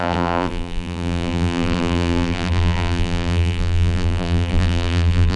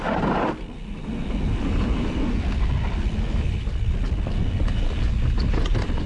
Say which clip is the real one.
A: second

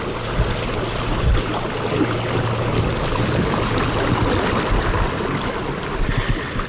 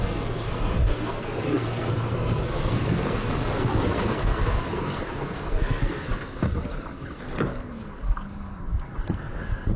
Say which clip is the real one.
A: first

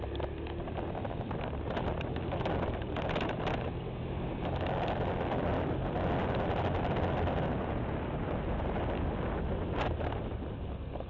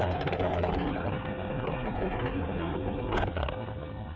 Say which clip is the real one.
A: first